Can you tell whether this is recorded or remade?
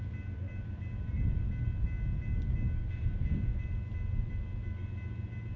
recorded